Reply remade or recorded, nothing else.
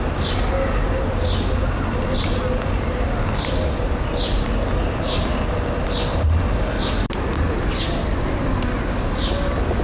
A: recorded